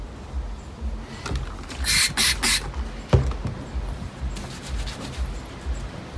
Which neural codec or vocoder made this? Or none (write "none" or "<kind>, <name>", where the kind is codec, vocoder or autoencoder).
none